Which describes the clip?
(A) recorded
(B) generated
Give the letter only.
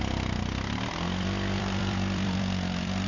B